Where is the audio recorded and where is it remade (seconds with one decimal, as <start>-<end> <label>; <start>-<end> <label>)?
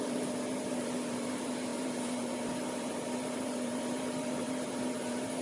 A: 0.0-5.4 remade